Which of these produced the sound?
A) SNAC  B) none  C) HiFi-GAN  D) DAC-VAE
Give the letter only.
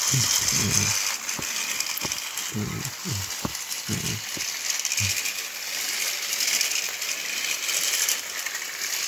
B